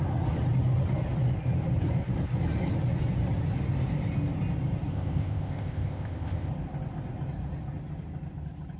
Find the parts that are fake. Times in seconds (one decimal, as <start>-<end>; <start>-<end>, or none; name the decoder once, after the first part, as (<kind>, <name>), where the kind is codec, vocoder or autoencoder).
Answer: 4.9-6.5 (codec, ZipCodec)